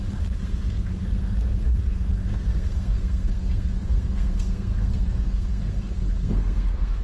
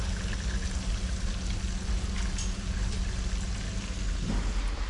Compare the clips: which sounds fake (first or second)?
first